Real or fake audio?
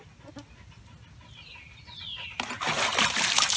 real